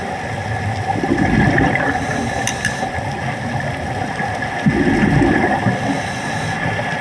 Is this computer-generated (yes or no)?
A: no